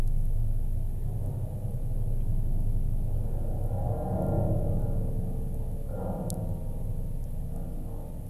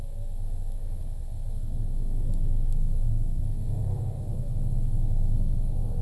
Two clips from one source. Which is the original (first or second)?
first